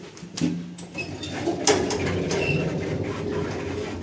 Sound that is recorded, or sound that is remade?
recorded